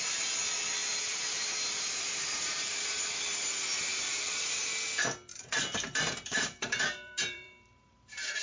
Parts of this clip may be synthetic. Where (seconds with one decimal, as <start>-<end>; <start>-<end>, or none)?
0.8-3.0; 3.9-4.6; 5.3-8.4